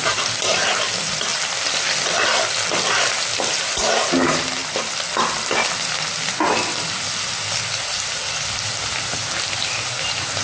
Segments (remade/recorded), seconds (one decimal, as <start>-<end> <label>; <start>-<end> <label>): 0.0-10.4 recorded